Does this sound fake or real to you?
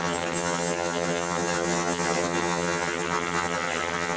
fake